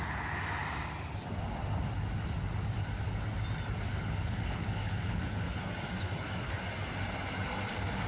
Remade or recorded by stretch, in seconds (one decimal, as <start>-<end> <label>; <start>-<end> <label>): 0.0-3.9 recorded; 3.9-5.6 remade; 5.6-8.1 recorded